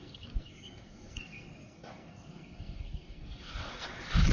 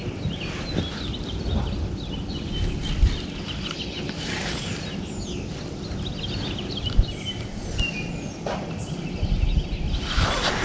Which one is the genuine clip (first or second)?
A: second